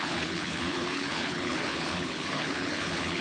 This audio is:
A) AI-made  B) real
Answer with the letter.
A